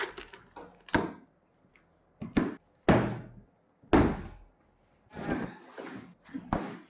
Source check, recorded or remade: recorded